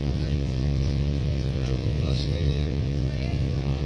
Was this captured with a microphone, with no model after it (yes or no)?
no